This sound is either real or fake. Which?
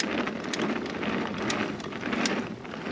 fake